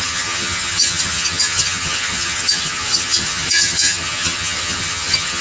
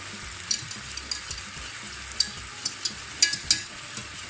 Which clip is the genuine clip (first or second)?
second